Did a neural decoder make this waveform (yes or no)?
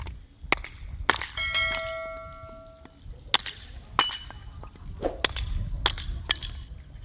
no